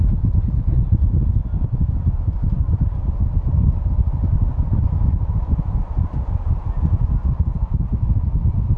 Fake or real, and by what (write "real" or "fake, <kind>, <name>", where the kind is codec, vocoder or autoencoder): real